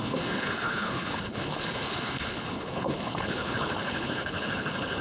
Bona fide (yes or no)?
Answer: no